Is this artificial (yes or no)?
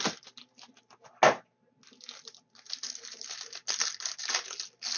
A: no